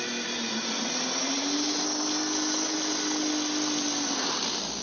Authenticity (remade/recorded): recorded